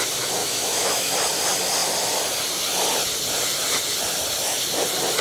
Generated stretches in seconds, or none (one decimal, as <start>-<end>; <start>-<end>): 0.4-1.1